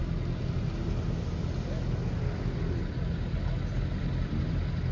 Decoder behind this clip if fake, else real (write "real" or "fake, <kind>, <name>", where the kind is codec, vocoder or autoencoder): real